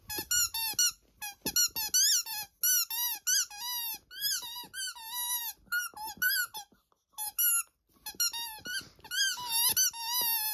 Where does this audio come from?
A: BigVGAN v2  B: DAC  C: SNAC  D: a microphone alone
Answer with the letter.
D